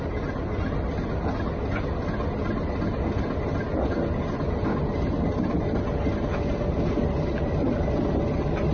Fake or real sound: real